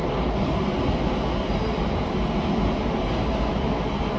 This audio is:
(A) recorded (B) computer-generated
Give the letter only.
A